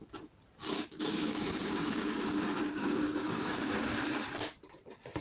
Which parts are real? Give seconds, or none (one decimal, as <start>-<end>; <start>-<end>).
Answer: 0.0-0.6; 3.7-5.2